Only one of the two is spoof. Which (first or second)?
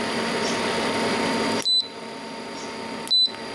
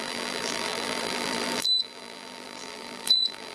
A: second